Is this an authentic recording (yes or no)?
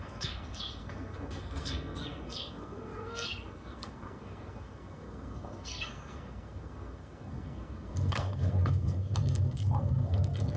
no